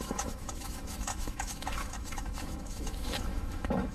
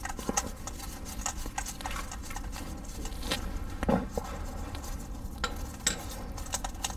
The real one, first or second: second